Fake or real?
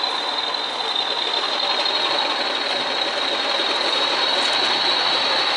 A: real